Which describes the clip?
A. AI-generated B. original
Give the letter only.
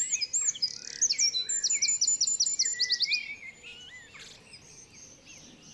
B